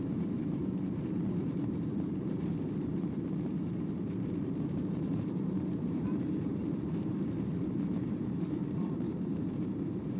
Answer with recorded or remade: remade